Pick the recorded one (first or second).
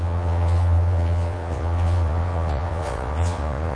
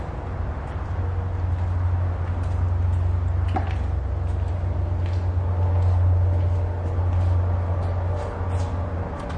second